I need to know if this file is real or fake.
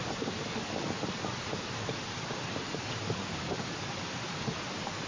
real